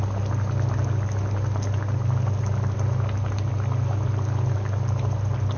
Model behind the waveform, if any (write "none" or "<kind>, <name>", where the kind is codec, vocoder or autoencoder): none